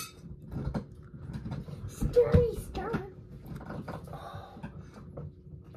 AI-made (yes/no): no